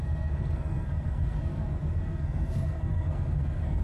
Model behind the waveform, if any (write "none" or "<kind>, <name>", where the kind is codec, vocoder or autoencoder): codec, SNAC